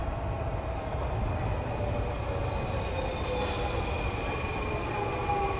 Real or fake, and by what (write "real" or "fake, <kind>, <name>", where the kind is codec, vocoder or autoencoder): real